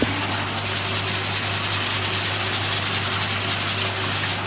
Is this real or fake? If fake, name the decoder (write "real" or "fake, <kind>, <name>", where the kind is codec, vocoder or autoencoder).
real